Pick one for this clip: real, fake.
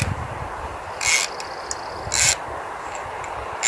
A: real